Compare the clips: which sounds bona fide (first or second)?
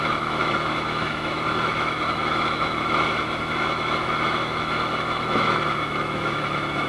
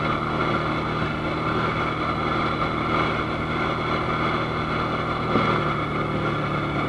second